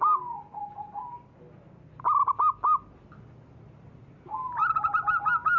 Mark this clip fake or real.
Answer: real